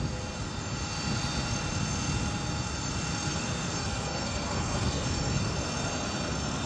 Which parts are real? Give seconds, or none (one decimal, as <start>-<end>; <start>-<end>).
0.0-3.3; 5.4-6.7